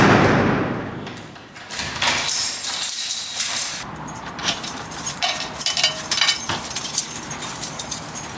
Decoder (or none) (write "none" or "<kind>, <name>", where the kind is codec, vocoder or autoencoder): vocoder, BigVGAN v2